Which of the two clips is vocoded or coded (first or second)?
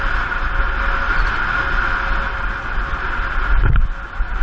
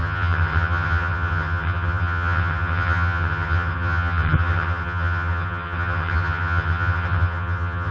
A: second